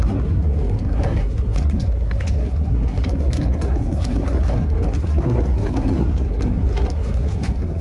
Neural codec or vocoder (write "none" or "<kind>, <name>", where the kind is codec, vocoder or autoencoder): codec, SNAC